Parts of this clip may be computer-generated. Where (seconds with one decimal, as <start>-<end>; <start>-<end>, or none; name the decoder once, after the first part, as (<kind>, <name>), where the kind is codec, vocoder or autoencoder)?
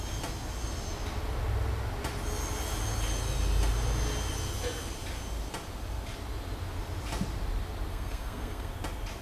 7.9-8.7 (codec, SNAC)